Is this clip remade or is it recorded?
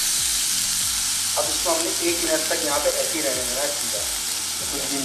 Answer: recorded